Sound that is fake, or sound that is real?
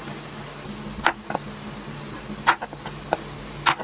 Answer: real